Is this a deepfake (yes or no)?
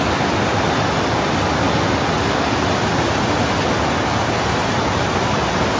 no